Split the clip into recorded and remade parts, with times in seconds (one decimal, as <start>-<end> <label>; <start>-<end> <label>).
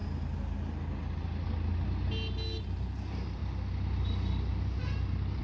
0.0-2.6 recorded; 2.6-3.4 remade; 3.4-5.4 recorded